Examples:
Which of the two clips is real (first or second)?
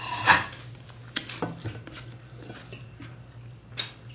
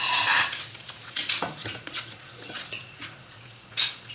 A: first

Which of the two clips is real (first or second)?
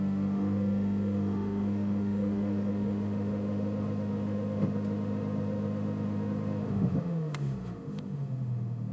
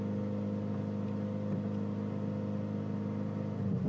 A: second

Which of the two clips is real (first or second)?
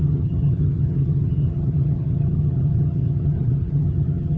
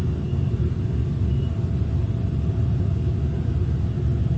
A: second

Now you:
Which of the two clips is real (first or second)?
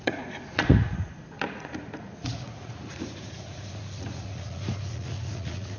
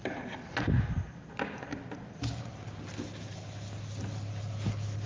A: second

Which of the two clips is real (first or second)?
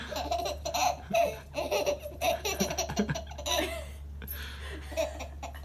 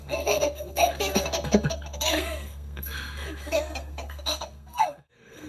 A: first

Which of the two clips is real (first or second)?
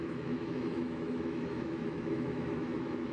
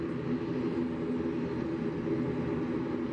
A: second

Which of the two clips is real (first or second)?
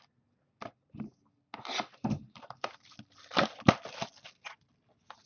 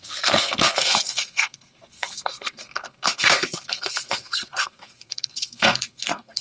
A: first